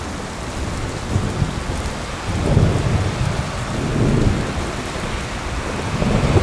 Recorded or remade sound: recorded